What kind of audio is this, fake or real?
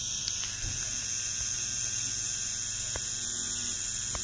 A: real